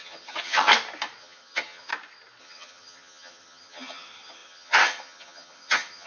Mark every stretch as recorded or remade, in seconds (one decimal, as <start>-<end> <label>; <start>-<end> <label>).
0.0-0.7 remade; 0.7-1.2 recorded; 1.2-1.9 remade; 1.9-2.4 recorded; 2.4-6.1 remade